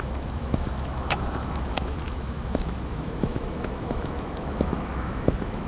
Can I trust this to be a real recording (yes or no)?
no